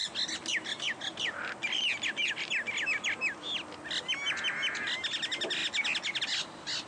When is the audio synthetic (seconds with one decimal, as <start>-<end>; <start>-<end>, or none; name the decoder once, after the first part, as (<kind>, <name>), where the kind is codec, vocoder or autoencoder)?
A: none

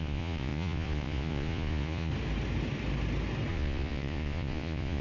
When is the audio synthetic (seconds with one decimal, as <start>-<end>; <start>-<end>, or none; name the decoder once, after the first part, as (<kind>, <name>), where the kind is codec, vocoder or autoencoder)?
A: 0.0-2.1 (vocoder, Vocos); 3.5-5.0

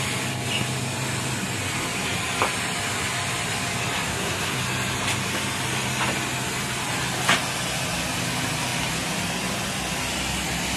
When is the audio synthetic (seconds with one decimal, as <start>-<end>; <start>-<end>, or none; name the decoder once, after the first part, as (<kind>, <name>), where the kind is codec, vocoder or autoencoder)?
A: 4.1-4.6 (codec, SNAC)

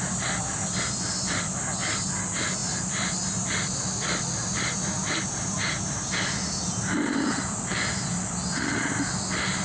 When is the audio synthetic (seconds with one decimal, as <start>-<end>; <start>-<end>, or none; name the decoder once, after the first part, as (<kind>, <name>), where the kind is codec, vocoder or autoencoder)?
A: none

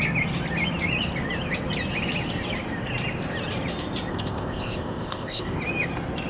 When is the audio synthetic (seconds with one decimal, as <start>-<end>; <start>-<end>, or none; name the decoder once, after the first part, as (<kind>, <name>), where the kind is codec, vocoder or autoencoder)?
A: 4.1-5.6 (codec, ZipCodec)

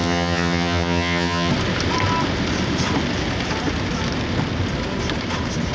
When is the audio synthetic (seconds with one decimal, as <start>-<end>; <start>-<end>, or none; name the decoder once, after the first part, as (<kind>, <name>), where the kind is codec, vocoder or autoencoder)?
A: 0.0-1.5 (vocoder, HiFi-GAN)

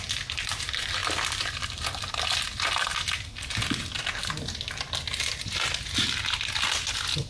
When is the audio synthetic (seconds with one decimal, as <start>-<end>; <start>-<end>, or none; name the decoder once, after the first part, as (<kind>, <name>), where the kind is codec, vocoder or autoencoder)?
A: none

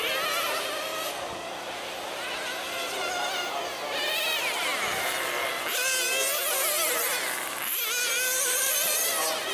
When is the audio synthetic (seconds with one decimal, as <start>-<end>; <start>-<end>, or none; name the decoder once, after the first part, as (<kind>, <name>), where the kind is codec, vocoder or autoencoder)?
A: 0.0-0.9 (vocoder, BigVGAN v2); 4.1-4.7; 8.4-9.5